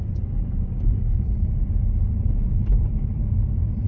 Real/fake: fake